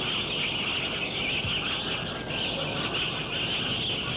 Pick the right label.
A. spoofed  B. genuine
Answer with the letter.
B